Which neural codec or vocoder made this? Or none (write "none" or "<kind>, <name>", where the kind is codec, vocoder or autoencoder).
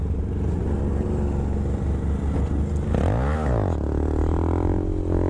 none